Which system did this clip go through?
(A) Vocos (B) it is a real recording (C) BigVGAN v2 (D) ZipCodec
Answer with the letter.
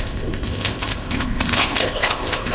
D